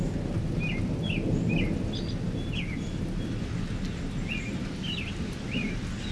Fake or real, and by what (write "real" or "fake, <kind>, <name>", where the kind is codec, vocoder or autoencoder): real